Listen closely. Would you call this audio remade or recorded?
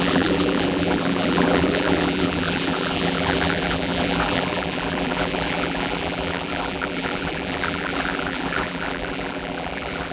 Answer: remade